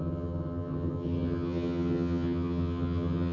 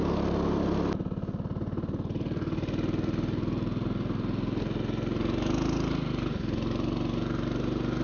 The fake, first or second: first